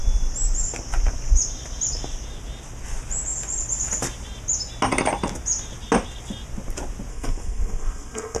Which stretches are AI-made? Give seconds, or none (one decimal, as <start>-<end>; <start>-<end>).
7.1-8.4